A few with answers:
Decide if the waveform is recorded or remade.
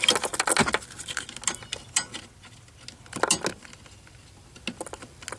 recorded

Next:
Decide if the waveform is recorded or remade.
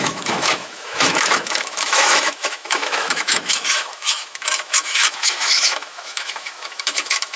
remade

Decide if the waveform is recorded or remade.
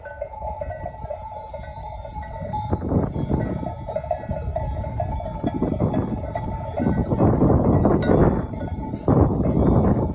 recorded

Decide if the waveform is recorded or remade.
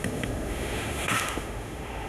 remade